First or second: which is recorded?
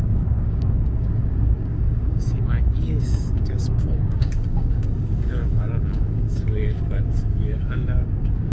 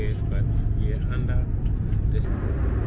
second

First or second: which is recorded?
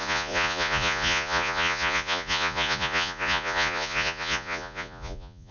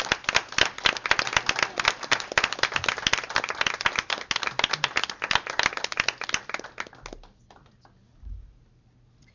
second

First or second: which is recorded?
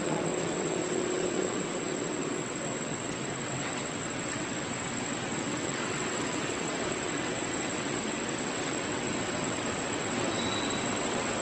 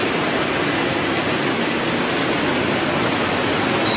second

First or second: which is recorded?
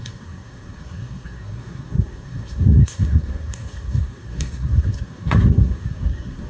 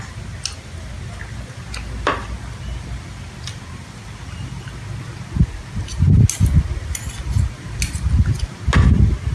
second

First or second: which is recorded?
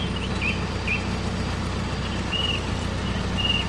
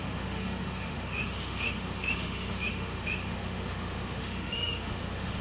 first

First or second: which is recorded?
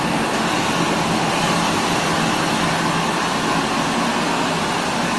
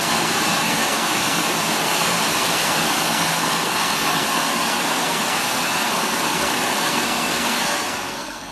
first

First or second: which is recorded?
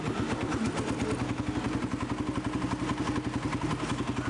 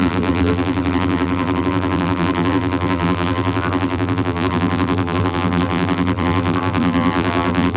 first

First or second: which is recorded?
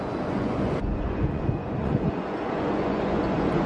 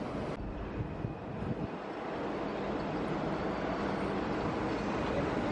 second